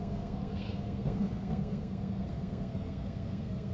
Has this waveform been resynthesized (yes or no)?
yes